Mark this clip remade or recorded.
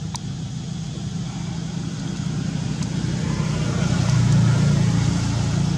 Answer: recorded